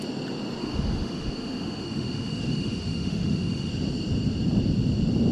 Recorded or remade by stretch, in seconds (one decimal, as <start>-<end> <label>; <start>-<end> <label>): 0.0-0.6 recorded; 0.6-3.7 remade; 3.7-5.3 recorded